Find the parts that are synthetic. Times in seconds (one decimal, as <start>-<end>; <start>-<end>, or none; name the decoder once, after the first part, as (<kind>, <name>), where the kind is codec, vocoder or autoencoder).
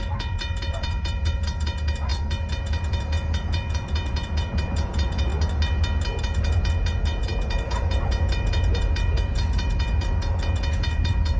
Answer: 0.0-5.3 (vocoder, Vocos); 6.2-11.4